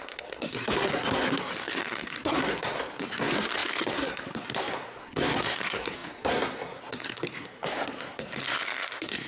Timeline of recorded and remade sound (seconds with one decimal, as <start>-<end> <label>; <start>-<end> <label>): 0.0-9.3 remade